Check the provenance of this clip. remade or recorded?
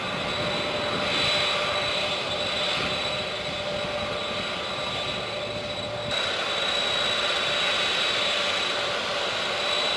recorded